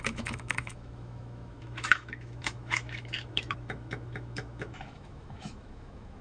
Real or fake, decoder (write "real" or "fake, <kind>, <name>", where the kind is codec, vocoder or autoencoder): fake, autoencoder, DAC-VAE